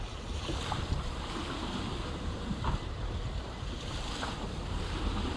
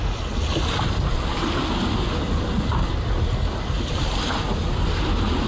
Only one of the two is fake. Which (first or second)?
first